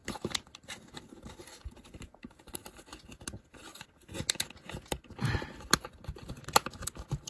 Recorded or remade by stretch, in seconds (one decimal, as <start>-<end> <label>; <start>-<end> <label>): 0.0-7.3 recorded